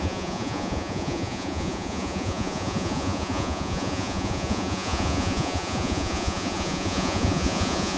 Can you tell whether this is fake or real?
fake